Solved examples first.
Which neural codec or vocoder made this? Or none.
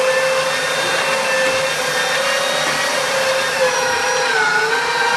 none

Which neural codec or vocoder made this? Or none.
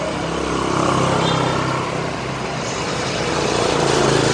none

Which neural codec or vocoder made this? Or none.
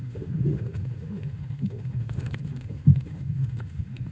autoencoder, DAC-VAE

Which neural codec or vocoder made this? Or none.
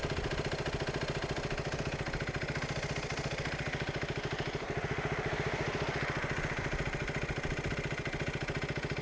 none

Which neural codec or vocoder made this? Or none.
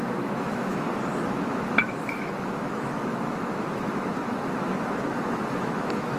autoencoder, DAC-VAE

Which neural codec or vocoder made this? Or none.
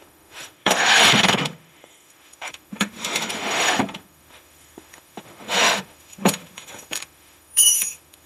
autoencoder, DAC-VAE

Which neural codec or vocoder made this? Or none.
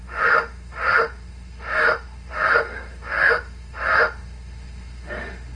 autoencoder, DAC-VAE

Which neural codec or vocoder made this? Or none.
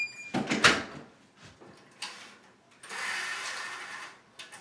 none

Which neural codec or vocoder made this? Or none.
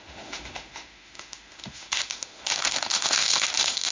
autoencoder, DAC-VAE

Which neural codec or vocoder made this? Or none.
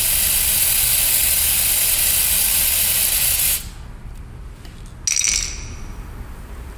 none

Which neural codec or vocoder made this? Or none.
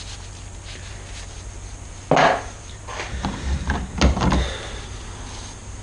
none